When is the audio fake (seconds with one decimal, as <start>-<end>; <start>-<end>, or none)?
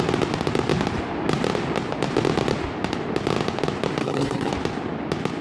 4.0-4.5